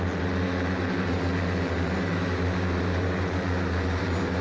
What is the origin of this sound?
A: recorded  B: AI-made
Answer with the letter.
A